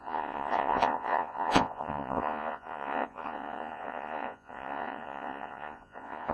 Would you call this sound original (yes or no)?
no